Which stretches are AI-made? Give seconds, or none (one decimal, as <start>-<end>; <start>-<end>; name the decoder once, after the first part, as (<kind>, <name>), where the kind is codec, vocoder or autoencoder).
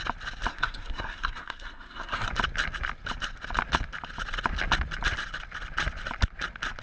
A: 0.5-2.3 (codec, SNAC)